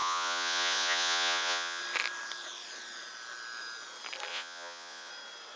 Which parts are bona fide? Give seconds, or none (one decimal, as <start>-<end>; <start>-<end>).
1.8-4.3; 5.1-5.6